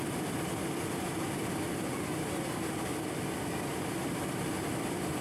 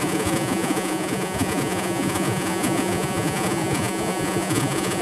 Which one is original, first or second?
first